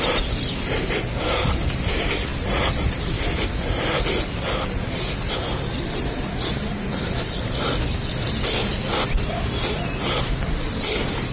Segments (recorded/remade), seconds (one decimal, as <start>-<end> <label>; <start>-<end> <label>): 0.0-11.3 recorded